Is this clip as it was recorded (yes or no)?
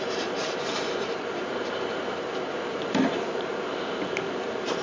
no